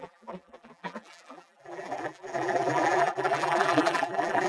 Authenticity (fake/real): fake